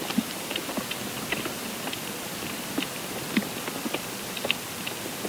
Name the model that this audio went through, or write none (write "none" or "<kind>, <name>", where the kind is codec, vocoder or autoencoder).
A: none